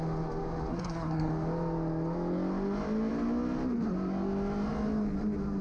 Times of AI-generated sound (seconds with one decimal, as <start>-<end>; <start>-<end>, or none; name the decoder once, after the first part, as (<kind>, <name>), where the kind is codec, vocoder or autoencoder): 0.7-1.3 (codec, SNAC)